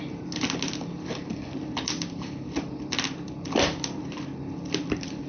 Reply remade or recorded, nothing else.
recorded